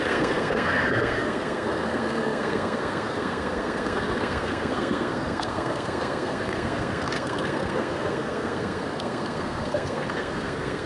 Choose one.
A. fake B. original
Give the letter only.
A